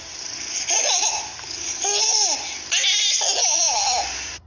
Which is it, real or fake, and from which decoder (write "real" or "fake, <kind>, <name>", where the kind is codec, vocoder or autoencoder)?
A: real